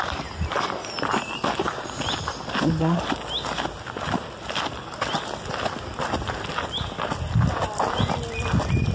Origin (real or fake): real